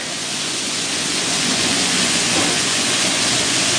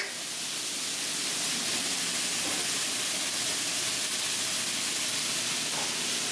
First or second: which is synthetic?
first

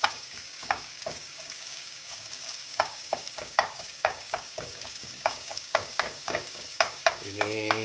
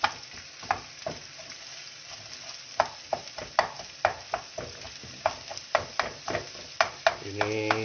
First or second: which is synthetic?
first